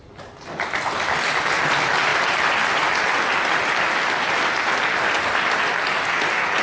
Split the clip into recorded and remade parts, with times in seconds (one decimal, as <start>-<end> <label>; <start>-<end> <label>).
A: 0.0-6.6 recorded